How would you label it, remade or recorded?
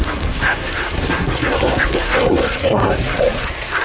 remade